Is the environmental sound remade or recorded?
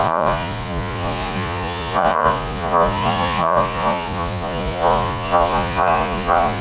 remade